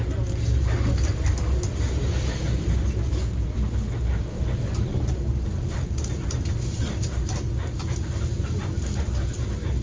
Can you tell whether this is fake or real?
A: real